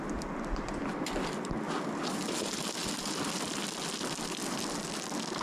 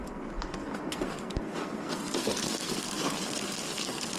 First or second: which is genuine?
first